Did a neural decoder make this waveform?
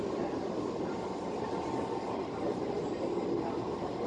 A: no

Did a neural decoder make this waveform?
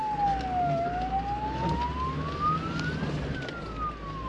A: no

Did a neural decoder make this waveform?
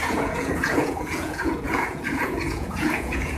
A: yes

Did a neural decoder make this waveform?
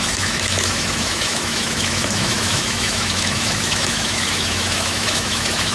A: yes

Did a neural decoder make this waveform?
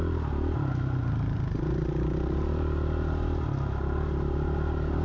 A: no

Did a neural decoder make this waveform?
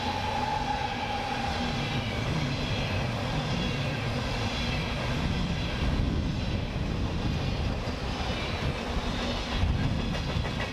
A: no